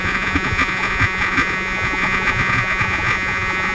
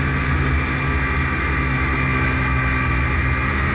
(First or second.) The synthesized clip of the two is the first